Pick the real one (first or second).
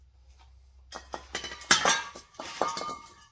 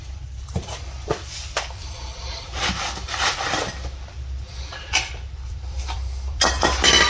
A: first